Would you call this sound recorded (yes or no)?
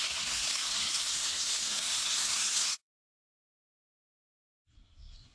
no